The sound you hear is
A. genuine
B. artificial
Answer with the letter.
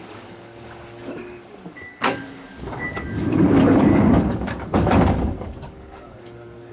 B